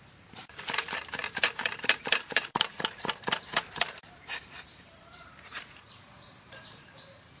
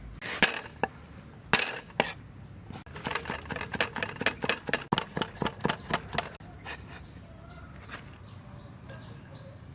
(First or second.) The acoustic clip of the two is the second